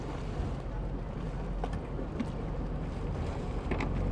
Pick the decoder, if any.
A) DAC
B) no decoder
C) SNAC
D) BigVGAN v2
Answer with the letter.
B